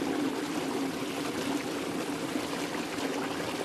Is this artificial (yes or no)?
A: no